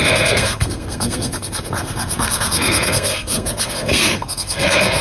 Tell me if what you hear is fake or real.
fake